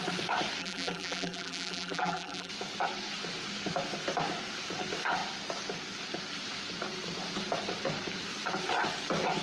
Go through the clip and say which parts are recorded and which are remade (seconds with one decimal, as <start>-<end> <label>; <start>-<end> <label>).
0.0-0.6 recorded; 0.6-2.5 remade; 2.5-9.4 recorded